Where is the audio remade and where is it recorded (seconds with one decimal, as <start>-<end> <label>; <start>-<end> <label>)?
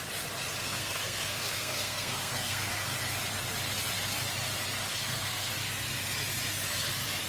0.0-0.6 recorded; 0.6-2.7 remade; 2.7-4.9 recorded; 4.9-5.5 remade; 5.5-7.3 recorded